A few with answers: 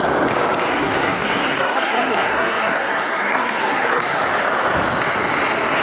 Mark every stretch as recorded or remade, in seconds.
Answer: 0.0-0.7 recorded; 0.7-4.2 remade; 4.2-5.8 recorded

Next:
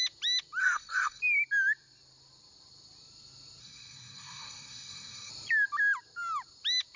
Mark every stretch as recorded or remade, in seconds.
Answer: 0.0-0.6 recorded; 0.6-1.2 remade; 1.2-3.6 recorded; 3.6-5.3 remade; 5.3-7.0 recorded

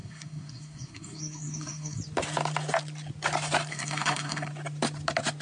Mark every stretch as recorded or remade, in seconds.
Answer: 0.0-2.0 remade; 2.0-3.7 recorded; 3.7-4.5 remade; 4.5-5.4 recorded

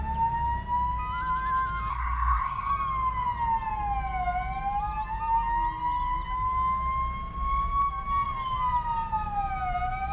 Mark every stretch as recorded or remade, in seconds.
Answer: 0.0-1.9 recorded; 1.9-2.7 remade; 2.7-10.1 recorded

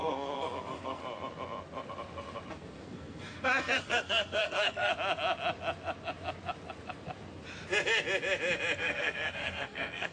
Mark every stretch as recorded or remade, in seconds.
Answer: 0.0-1.0 remade; 1.0-2.5 recorded; 2.5-4.9 remade; 4.9-8.8 recorded; 8.8-10.1 remade

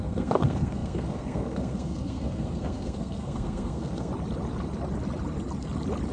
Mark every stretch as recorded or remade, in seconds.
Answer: 0.0-4.1 remade; 4.1-6.1 recorded

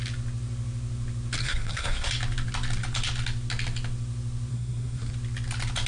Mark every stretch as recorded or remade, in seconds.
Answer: 0.0-1.4 recorded; 1.4-2.1 remade; 2.1-4.5 recorded; 4.5-5.1 remade; 5.1-5.9 recorded

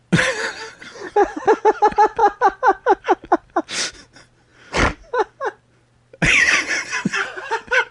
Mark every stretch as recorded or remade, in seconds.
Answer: 0.0-7.9 recorded